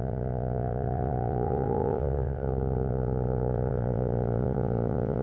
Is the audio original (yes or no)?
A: no